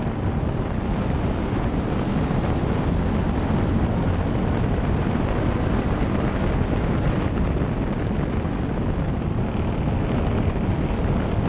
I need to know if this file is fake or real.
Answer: real